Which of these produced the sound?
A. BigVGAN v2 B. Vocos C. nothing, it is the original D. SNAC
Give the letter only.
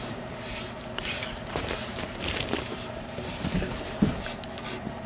A